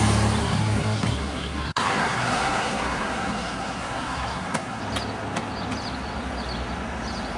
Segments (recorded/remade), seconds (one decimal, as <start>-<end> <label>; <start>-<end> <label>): 0.0-0.4 recorded; 0.4-4.8 remade; 4.8-7.4 recorded